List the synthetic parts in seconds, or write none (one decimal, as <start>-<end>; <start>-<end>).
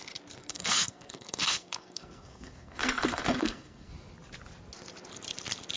0.4-3.9